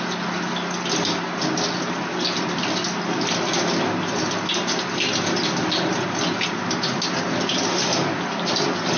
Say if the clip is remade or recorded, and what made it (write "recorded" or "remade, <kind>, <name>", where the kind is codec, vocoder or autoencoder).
recorded